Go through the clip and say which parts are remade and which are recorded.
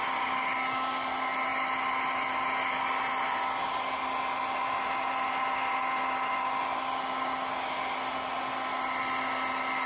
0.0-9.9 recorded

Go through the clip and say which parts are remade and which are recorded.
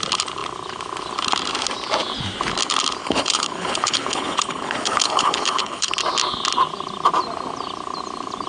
0.0-3.0 recorded; 3.0-5.9 remade; 5.9-8.5 recorded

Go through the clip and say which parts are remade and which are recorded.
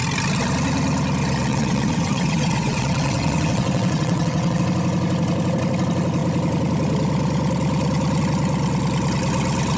0.0-1.5 recorded; 1.5-4.6 remade; 4.6-9.8 recorded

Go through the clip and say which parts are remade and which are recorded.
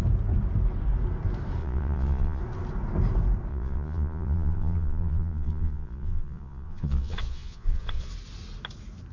0.0-1.6 recorded; 1.6-2.4 remade; 2.4-3.5 recorded; 3.5-8.1 remade; 8.1-9.1 recorded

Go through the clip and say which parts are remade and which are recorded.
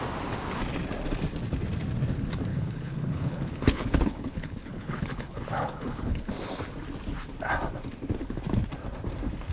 0.0-2.5 recorded; 2.5-6.3 remade; 6.3-9.5 recorded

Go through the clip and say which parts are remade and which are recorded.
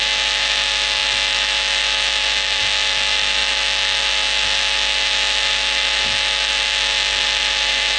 0.0-8.0 remade